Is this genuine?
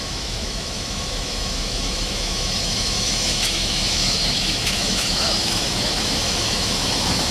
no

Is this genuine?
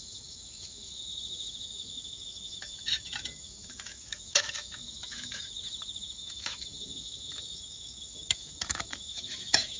no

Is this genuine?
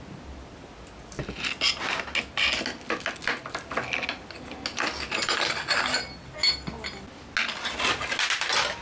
yes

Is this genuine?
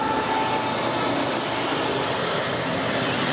yes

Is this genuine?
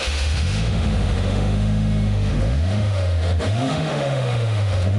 no